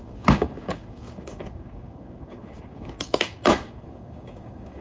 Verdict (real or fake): fake